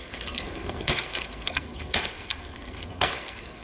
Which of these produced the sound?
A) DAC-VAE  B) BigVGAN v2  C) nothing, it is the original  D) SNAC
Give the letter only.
D